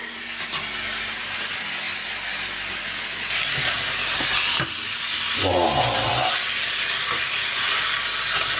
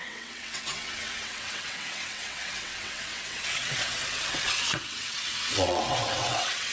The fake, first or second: second